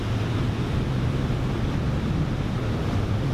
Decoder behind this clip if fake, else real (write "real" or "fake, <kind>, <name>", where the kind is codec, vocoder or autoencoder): real